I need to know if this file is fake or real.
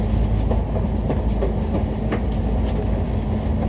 real